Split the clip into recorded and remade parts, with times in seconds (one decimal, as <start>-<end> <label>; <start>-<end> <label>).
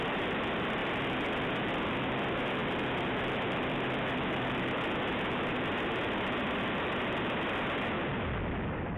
0.0-9.0 recorded